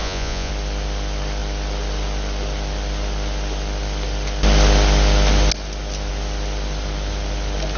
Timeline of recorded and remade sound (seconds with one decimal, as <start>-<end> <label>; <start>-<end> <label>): 0.0-0.5 remade; 0.5-7.8 recorded